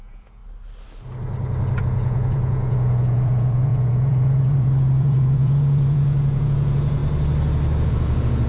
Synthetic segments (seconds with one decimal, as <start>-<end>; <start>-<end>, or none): 0.0-0.4; 1.8-7.0; 7.9-8.5